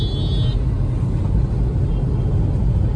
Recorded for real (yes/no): yes